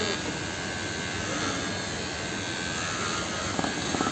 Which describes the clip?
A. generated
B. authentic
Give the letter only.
B